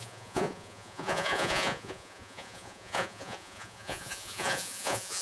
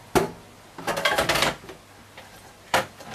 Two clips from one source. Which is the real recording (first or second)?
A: second